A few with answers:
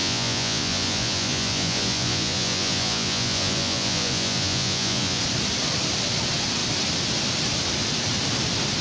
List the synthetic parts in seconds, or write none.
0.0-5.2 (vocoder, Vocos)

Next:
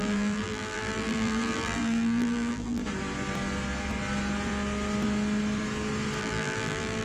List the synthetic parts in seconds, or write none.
0.0-2.8 (vocoder, BigVGAN v2); 6.2-7.0

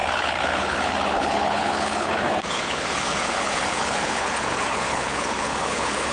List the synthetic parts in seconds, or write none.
0.0-6.1 (codec, HILCodec)

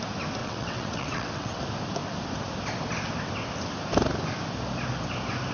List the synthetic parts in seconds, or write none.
0.4-1.6 (vocoder, WaveNeXt)

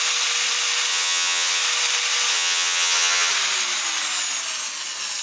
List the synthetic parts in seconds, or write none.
0.9-1.6 (vocoder, HiFi-GAN); 2.3-3.3

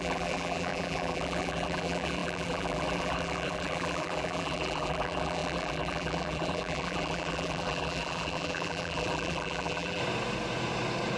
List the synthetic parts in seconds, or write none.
0.0-10.0 (vocoder, BigVGAN v2)

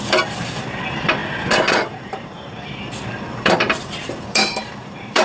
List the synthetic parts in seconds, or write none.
0.0-5.2 (vocoder, BigVGAN v2)

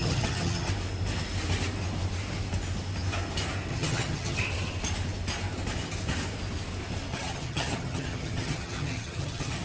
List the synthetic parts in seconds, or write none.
0.0-0.7 (vocoder, HiFi-GAN); 3.7-4.4; 7.1-9.6